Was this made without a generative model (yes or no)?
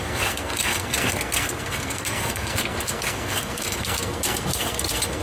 no